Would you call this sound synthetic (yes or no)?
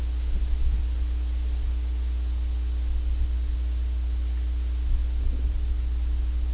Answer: no